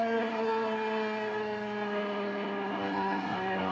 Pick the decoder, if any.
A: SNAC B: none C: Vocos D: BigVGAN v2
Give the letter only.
A